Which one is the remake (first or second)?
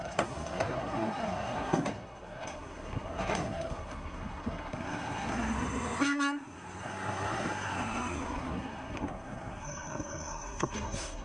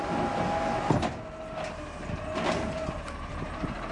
first